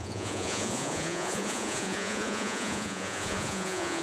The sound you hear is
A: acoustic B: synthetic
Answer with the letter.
B